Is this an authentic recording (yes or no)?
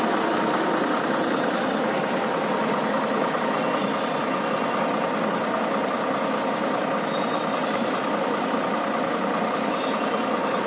yes